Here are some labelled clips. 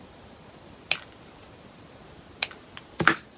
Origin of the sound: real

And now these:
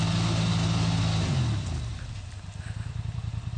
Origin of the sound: fake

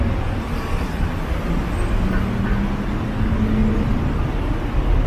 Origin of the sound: real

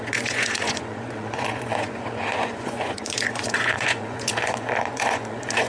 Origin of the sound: fake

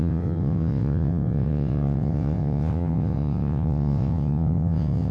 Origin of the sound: fake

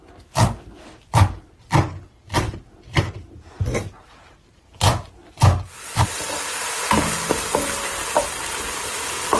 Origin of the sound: real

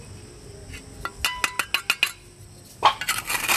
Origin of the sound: real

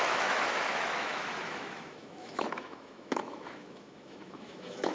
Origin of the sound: fake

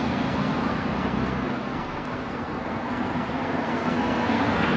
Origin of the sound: fake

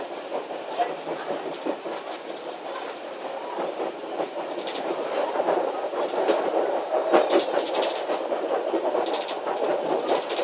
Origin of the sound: fake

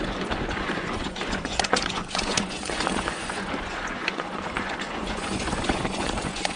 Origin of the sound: fake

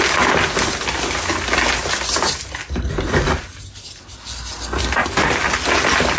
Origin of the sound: real